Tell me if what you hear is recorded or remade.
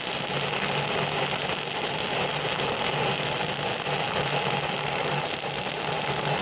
recorded